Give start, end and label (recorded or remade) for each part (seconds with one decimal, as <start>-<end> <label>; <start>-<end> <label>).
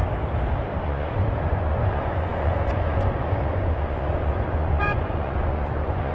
0.0-0.8 recorded; 0.8-6.1 remade